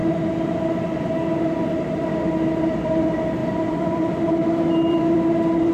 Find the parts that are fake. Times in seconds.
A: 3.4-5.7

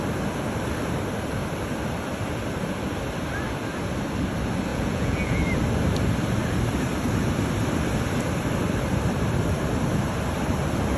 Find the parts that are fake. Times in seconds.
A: 4.7-5.4

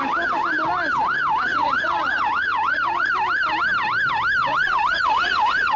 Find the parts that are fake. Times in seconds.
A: 1.5-3.1; 4.4-5.8

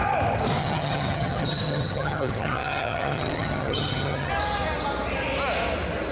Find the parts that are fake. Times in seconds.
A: 0.6-4.3

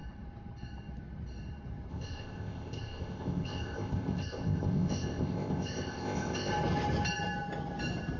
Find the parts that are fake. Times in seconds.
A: 1.9-6.5